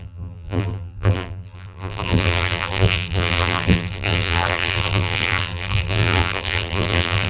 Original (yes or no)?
no